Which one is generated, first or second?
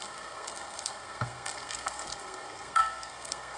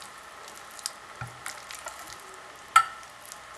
first